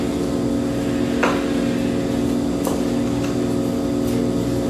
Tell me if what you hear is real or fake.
real